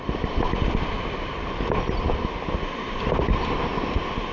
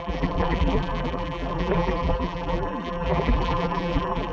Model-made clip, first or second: second